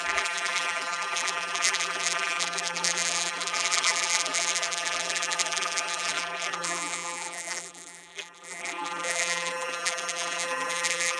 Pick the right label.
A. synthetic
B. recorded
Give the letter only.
A